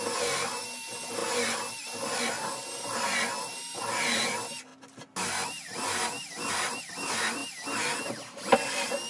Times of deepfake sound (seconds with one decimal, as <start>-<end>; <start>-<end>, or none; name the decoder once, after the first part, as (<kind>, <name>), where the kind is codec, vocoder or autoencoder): none